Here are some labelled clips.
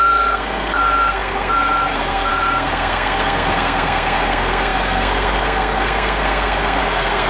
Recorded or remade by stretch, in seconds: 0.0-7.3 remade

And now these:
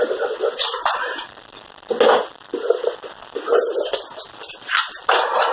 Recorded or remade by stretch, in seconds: 0.0-1.9 remade; 1.9-5.5 recorded

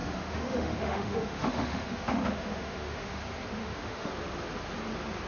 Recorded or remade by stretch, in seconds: 0.0-3.2 remade; 3.2-3.6 recorded; 3.6-4.1 remade; 4.1-5.3 recorded

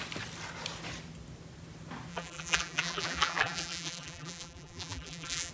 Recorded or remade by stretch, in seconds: 0.0-2.1 recorded; 2.1-5.5 remade

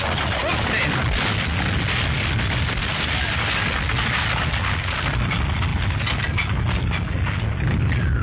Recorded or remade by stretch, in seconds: 0.0-8.2 recorded

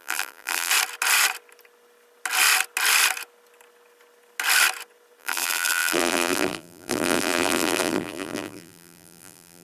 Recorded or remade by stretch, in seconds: 0.0-0.7 remade; 0.7-5.2 recorded; 5.2-9.6 remade

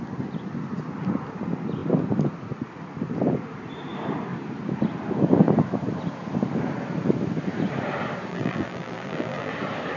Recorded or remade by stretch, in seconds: 0.0-8.3 recorded; 8.3-9.5 remade; 9.5-10.0 recorded